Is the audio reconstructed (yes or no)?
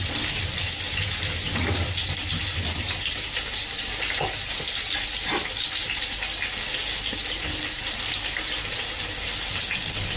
no